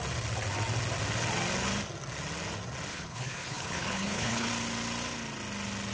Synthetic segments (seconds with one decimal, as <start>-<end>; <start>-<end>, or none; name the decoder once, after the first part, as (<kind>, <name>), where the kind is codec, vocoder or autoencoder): 2.9-4.5 (codec, HILCodec)